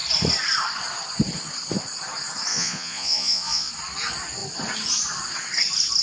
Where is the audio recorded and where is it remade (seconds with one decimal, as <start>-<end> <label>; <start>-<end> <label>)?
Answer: 0.0-2.5 recorded; 2.5-3.7 remade; 3.7-6.0 recorded